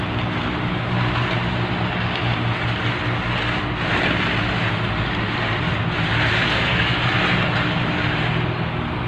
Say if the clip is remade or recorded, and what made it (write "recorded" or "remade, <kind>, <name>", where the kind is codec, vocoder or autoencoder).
recorded